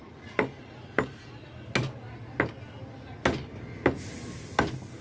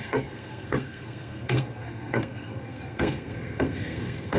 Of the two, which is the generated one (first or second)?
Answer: second